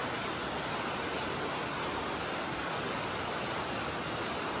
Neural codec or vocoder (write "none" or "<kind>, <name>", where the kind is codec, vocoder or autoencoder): none